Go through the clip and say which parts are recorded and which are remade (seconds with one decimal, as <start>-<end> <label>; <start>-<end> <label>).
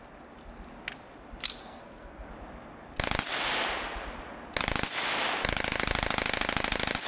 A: 0.0-1.6 recorded; 1.6-2.3 remade; 2.3-7.1 recorded